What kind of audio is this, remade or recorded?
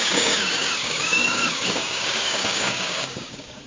remade